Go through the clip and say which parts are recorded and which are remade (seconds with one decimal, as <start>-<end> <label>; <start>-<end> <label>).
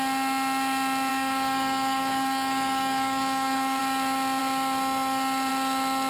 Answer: 0.0-1.1 recorded; 1.1-3.8 remade; 3.8-6.1 recorded